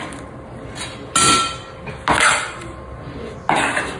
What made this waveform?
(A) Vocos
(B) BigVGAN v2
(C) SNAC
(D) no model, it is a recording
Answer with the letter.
D